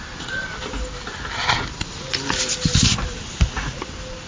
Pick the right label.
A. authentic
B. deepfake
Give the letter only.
A